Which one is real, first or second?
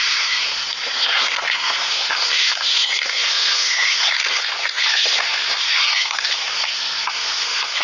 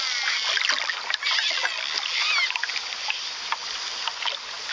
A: second